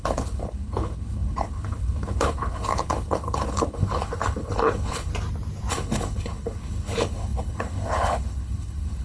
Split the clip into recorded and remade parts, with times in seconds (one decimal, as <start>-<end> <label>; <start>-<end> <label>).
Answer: 0.0-5.1 remade; 5.1-5.7 recorded; 5.7-9.0 remade